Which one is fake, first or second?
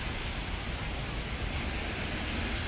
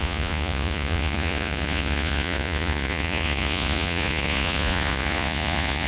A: second